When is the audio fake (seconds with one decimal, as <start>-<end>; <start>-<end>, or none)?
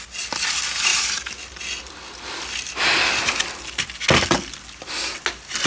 none